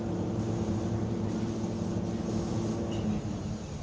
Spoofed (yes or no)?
no